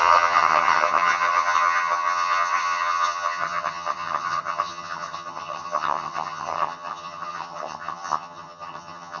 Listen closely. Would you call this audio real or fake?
fake